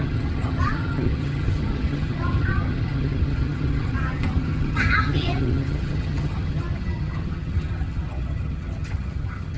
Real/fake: fake